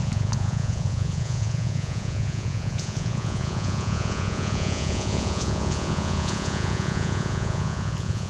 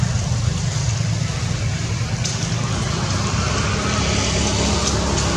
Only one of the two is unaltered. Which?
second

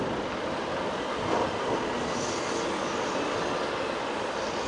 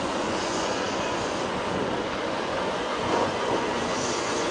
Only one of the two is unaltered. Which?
first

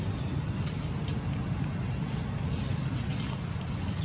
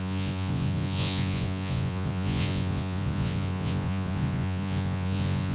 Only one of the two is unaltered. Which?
first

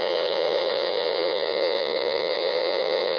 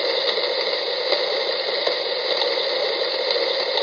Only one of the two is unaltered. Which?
second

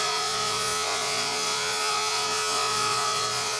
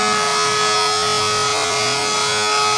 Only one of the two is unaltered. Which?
second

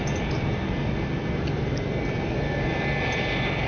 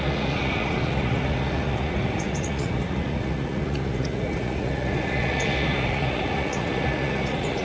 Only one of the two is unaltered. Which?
first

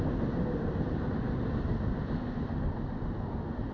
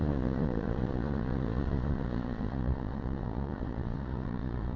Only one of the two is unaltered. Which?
first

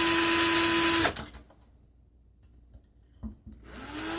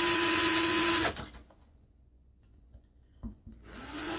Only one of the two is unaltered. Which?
first